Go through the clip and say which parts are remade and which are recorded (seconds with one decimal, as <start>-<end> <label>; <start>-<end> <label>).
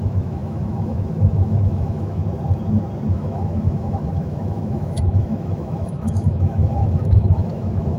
0.0-2.2 remade; 2.2-3.1 recorded; 3.1-8.0 remade